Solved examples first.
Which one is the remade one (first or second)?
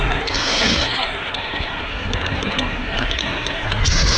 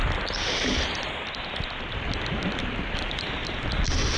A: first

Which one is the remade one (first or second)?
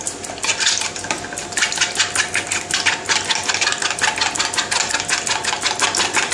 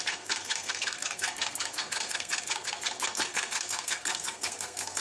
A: second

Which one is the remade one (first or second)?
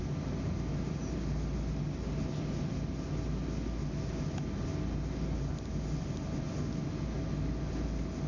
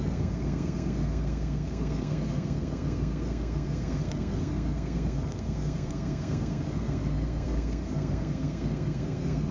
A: second